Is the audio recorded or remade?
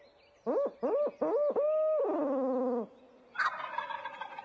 recorded